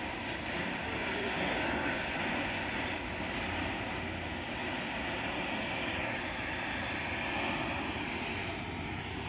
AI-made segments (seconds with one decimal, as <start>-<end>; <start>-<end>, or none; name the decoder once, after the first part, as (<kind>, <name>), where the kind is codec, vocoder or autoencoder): 1.0-2.8 (vocoder, Vocos)